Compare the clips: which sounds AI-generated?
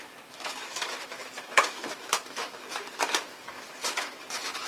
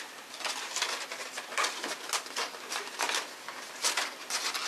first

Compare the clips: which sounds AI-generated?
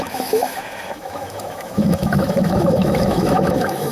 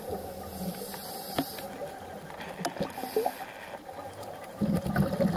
first